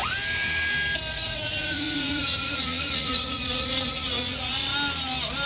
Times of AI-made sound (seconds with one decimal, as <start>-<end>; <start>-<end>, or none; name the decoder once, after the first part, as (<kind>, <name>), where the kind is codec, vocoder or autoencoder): 1.1-4.7 (vocoder, Vocos)